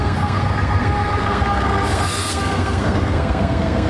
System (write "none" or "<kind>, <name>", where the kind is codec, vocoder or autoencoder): codec, SNAC